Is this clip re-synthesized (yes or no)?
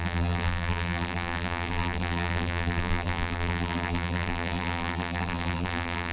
yes